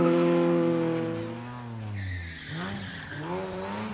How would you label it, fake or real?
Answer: real